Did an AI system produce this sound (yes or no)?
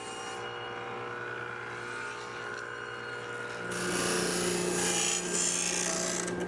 no